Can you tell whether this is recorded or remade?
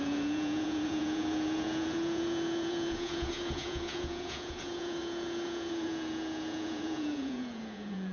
remade